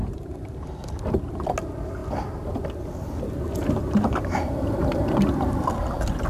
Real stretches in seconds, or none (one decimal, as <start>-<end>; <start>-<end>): 0.8-6.3